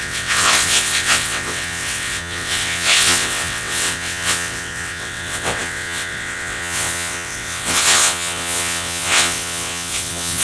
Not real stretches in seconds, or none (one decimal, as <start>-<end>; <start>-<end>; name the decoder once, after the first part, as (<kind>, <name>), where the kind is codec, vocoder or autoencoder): 0.0-10.4 (vocoder, WaveNeXt)